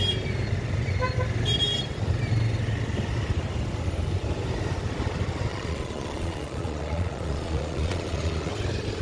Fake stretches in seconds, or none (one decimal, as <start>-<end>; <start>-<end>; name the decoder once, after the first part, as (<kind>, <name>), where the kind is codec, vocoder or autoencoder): 5.5-8.5 (vocoder, Vocos)